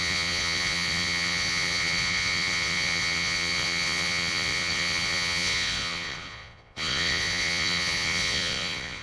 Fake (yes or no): yes